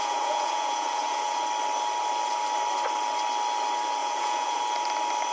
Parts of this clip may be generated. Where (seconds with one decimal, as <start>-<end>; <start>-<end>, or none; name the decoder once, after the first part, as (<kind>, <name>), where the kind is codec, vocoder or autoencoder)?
0.0-1.4 (vocoder, Vocos); 4.0-4.6